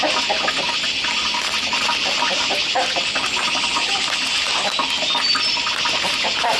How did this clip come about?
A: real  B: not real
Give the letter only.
A